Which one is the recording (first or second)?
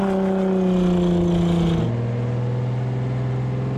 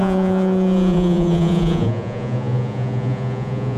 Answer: first